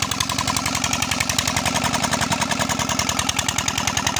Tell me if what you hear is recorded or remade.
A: recorded